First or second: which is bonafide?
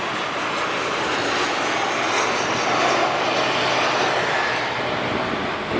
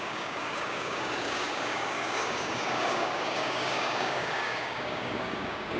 first